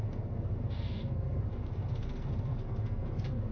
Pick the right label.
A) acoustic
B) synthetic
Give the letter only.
B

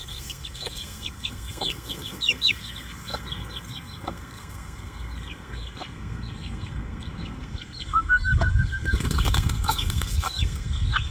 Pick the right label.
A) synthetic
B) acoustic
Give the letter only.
A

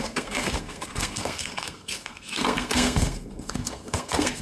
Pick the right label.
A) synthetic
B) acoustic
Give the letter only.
A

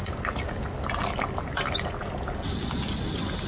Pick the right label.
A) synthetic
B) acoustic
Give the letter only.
B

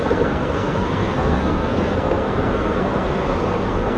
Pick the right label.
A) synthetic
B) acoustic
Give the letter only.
A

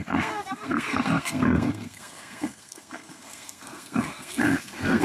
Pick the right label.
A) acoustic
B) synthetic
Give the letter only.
B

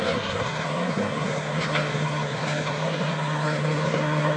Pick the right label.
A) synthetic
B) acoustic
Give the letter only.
A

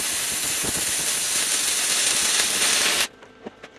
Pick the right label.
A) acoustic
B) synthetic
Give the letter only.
A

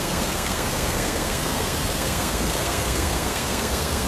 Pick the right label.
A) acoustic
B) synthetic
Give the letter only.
B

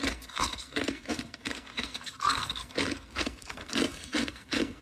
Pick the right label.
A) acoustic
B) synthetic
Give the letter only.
B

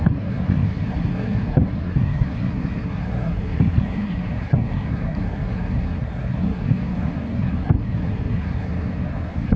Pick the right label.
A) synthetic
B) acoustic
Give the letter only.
A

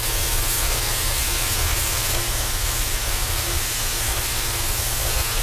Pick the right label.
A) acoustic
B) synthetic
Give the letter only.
B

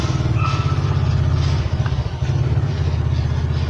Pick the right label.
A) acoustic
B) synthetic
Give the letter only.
A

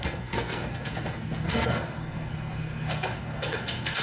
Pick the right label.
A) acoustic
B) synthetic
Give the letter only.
B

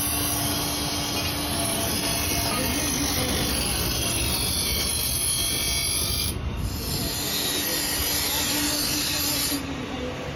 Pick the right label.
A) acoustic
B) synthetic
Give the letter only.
A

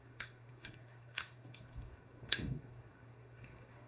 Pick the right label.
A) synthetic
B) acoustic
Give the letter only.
A